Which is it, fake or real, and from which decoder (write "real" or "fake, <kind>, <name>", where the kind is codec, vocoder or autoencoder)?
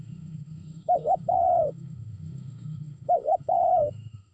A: fake, autoencoder, DAC-VAE